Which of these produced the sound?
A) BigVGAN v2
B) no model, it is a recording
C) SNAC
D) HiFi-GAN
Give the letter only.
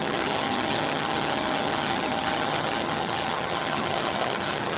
D